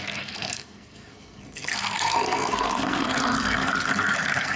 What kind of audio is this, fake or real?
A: fake